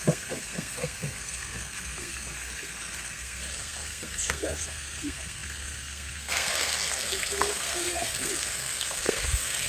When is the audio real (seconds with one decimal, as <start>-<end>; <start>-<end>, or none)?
none

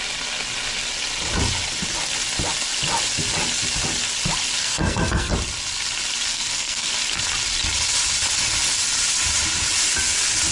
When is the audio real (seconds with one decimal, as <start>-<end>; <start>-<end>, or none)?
0.0-4.6; 5.3-6.3; 6.9-10.5